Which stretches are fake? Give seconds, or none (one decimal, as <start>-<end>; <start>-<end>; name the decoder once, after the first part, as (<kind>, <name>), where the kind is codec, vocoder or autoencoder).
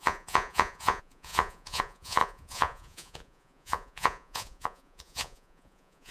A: 0.0-6.1 (vocoder, Vocos)